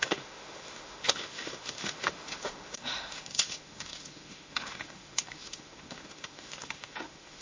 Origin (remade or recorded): remade